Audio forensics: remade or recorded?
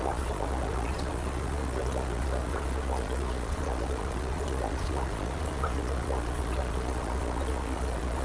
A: remade